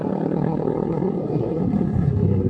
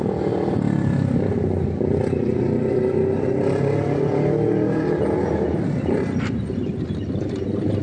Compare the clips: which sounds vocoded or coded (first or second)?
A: first